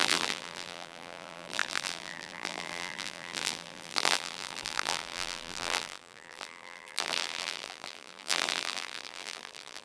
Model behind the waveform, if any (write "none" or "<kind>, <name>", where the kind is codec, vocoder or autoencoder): vocoder, BigVGAN v2